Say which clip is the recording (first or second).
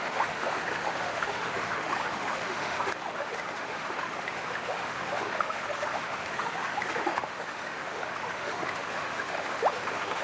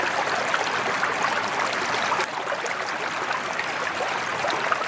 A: second